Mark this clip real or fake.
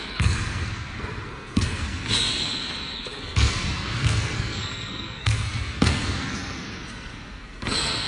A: fake